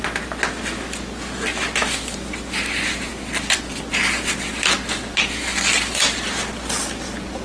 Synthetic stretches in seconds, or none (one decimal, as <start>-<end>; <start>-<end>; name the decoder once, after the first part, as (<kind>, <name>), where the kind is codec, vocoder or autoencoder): none